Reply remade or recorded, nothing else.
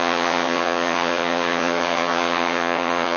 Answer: remade